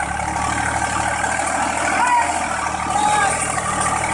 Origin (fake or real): real